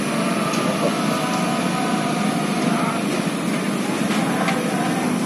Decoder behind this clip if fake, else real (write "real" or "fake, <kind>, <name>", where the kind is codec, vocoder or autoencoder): real